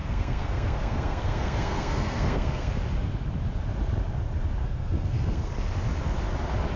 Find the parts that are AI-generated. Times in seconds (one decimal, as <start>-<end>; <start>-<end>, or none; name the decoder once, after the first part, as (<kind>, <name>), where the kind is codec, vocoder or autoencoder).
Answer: 0.0-2.7 (codec, SNAC); 4.6-5.5